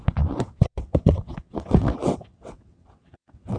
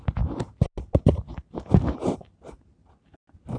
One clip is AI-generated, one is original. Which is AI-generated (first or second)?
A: first